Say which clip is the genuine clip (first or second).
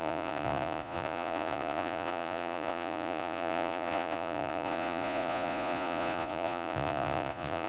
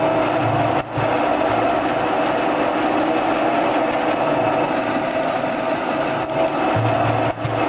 second